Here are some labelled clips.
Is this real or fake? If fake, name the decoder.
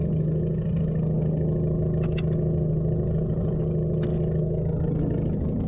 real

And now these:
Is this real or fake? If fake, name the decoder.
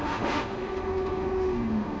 fake, autoencoder, DAC-VAE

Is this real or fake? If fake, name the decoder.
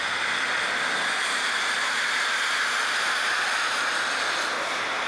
real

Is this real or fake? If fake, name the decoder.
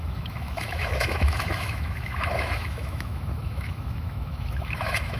fake, autoencoder, DAC-VAE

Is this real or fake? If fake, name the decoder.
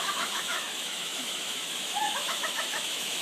fake, autoencoder, DAC-VAE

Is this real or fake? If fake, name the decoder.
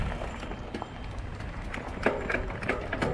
real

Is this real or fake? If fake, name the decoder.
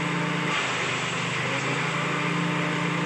real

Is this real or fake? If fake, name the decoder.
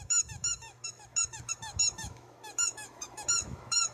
fake, autoencoder, DAC-VAE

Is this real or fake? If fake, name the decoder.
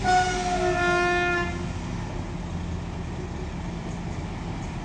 real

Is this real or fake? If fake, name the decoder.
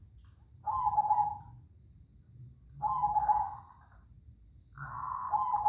real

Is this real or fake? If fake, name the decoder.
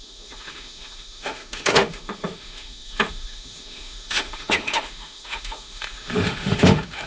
fake, autoencoder, DAC-VAE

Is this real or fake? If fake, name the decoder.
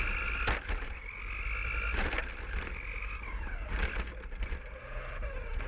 real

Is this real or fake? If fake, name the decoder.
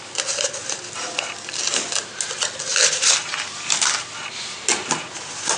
real